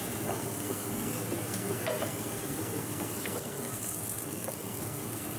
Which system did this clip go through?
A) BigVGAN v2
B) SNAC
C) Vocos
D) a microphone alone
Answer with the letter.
B